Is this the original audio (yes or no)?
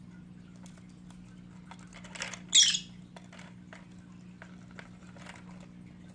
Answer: yes